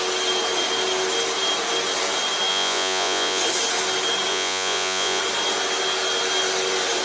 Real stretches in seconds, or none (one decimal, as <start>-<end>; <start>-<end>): 0.0-2.5; 3.4-4.3; 5.2-7.0